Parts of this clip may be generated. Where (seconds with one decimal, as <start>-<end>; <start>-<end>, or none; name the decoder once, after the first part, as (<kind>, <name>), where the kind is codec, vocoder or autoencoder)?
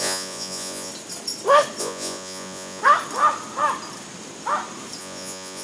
0.0-0.9 (vocoder, Vocos); 1.8-2.8; 5.0-5.6